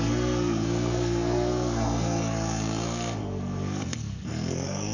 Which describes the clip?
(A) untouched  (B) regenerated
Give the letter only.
B